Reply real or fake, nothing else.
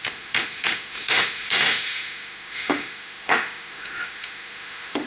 fake